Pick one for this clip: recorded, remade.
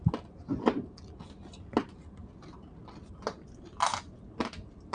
recorded